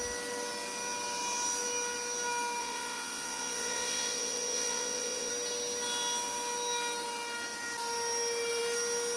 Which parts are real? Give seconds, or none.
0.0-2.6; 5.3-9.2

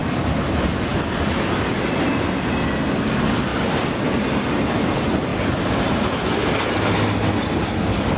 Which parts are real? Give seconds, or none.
0.0-8.2

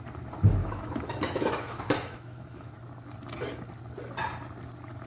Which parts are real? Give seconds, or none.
0.0-0.6; 2.8-5.1